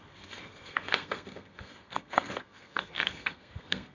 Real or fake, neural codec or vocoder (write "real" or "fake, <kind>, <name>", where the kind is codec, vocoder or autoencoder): fake, codec, SNAC